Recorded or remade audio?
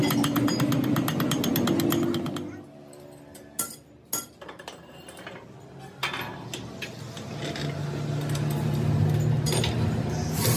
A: recorded